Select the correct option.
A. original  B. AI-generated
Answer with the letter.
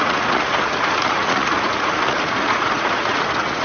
B